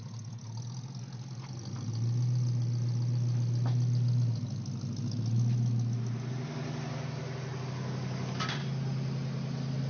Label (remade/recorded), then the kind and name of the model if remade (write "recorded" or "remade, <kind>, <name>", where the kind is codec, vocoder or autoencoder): recorded